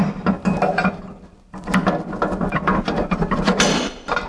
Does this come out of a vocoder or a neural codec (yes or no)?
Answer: no